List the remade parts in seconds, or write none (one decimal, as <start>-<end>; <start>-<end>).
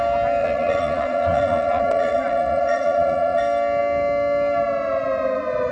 0.4-3.4